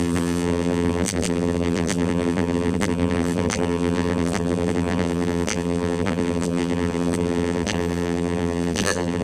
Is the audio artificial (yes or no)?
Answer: yes